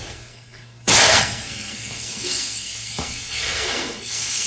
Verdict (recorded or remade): remade